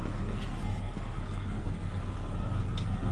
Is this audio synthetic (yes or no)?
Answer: yes